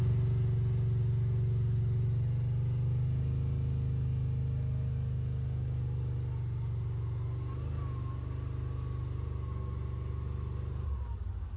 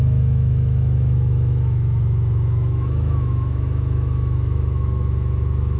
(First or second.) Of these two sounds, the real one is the first